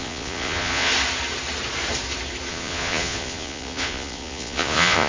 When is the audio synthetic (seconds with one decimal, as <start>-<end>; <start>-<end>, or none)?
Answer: 0.0-0.9; 2.5-5.1